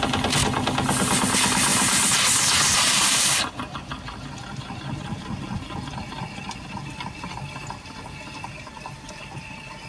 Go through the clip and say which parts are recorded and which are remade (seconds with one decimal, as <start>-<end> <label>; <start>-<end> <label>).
0.0-9.9 recorded